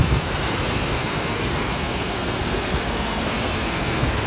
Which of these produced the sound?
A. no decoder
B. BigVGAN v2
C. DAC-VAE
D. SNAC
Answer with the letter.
D